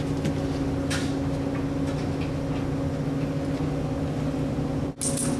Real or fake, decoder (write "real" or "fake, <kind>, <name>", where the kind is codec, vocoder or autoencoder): real